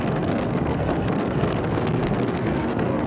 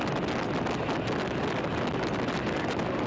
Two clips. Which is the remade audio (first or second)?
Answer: first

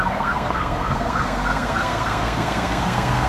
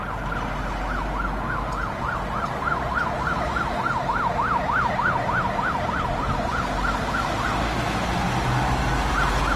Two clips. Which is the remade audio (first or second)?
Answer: first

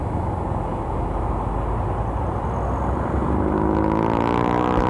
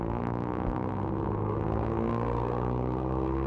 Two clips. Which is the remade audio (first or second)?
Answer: second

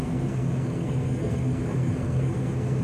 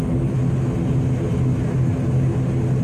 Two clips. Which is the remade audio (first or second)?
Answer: first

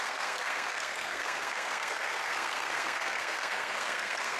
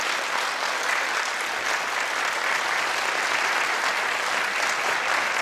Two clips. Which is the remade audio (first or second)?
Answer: first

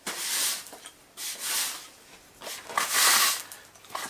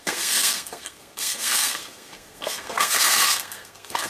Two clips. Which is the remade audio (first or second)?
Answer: second